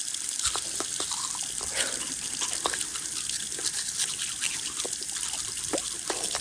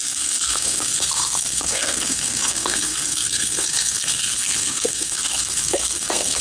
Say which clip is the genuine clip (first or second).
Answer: first